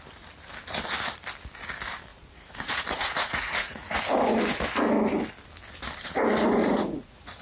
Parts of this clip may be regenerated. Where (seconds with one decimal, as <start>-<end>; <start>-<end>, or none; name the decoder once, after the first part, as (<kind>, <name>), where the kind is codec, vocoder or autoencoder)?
2.1-4.0 (vocoder, Vocos); 6.6-7.4